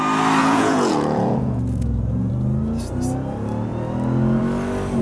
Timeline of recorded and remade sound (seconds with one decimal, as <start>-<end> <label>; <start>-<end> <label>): 0.0-0.4 recorded; 0.4-2.3 remade; 2.3-5.0 recorded